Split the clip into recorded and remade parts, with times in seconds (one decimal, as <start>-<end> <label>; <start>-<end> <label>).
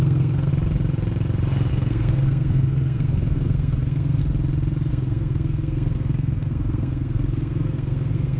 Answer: 0.0-0.5 remade; 0.5-1.7 recorded; 1.7-4.2 remade; 4.2-4.9 recorded; 4.9-8.4 remade